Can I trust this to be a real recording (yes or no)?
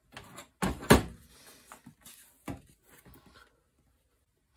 yes